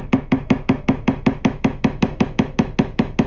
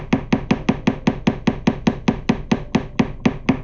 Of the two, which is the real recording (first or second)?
second